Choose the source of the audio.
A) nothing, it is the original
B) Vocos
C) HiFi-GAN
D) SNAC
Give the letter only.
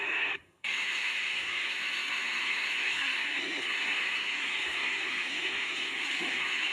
D